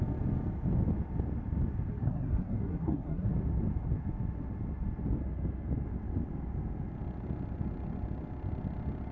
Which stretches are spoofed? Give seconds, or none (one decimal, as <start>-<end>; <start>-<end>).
1.9-3.3